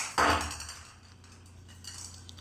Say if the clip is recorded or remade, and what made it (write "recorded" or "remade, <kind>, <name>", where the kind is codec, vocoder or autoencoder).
recorded